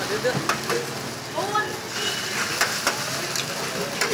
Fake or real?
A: real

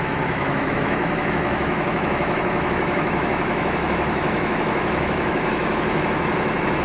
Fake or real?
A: fake